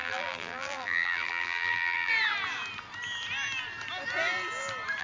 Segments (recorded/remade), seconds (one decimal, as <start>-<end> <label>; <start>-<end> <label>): 0.0-2.1 remade; 2.1-5.0 recorded